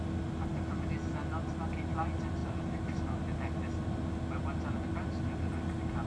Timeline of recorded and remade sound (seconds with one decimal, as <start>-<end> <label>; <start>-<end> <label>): 0.0-6.1 recorded